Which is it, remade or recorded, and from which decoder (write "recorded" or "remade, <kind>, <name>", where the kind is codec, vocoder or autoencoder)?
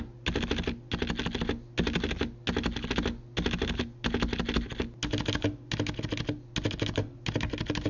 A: recorded